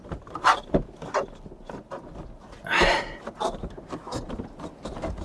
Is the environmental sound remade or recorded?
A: recorded